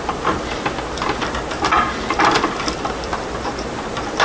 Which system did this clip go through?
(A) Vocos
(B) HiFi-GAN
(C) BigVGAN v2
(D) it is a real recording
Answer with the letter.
D